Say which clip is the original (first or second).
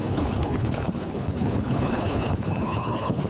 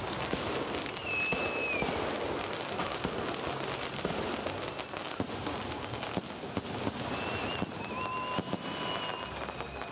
second